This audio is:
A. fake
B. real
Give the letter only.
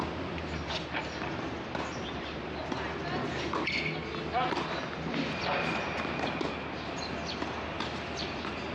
B